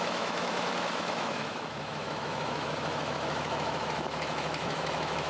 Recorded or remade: remade